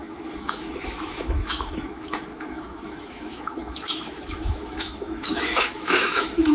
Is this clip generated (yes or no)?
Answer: yes